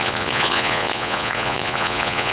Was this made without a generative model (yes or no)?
no